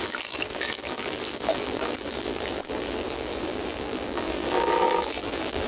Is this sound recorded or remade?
remade